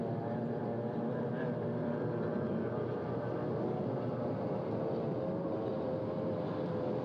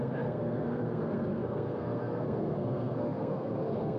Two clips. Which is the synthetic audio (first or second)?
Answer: second